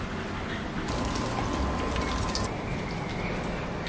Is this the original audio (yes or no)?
yes